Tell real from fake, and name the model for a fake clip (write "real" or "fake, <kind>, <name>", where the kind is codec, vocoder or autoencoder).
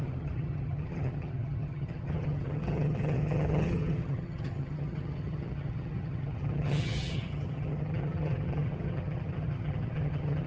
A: fake, vocoder, HiFi-GAN